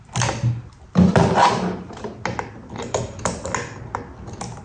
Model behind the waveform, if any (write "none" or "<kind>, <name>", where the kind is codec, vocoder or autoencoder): none